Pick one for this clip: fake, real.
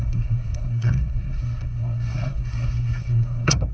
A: fake